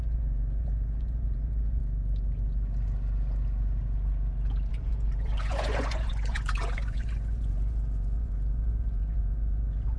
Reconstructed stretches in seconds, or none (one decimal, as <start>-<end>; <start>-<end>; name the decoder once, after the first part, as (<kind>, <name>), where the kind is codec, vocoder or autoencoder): 0.0-1.8 (vocoder, Vocos); 4.7-10.0